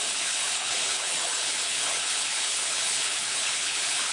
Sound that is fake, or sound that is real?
fake